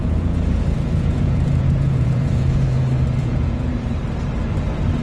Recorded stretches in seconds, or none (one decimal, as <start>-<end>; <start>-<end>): 2.8-3.2; 3.7-5.0